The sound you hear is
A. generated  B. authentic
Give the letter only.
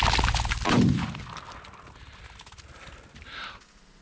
B